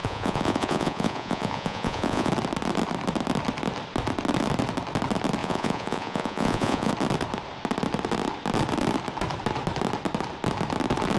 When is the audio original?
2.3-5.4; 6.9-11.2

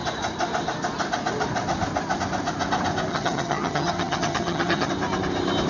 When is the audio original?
0.0-3.1; 4.9-5.7